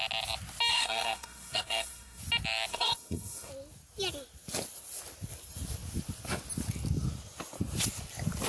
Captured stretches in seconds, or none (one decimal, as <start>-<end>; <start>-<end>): 0.0-0.7; 2.2-2.7; 3.5-8.5